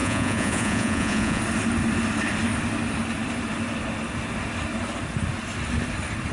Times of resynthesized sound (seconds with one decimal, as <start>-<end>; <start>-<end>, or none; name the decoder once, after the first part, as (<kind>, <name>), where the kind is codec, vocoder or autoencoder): 0.0-1.4 (vocoder, Vocos)